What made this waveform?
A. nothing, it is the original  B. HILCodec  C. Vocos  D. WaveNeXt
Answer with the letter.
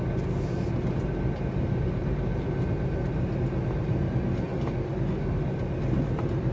A